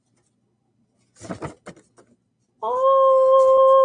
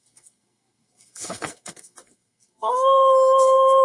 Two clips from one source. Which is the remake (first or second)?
second